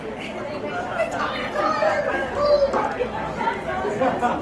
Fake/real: real